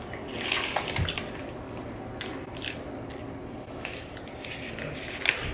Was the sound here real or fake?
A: real